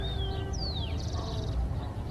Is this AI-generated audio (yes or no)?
no